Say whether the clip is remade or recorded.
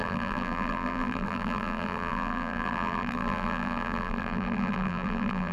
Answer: remade